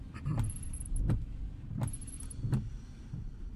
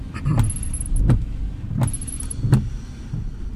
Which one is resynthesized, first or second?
first